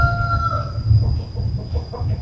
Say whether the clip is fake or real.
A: real